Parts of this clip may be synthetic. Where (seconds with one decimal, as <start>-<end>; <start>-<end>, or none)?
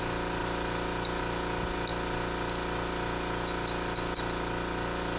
none